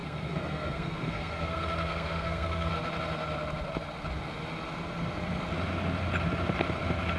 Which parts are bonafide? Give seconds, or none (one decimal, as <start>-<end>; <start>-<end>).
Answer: 2.7-7.2